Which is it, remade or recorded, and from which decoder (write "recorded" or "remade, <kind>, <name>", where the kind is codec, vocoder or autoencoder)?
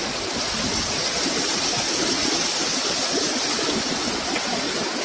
recorded